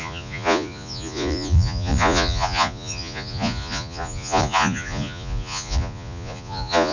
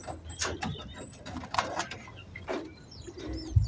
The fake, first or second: first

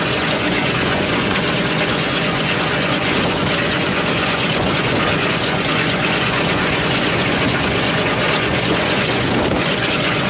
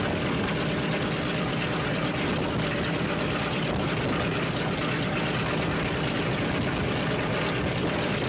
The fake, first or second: first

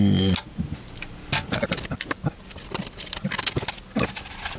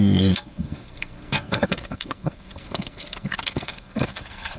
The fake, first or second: second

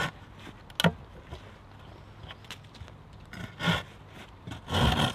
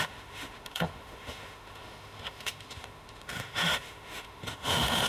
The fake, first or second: second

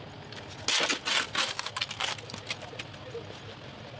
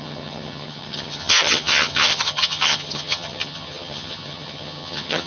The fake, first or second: second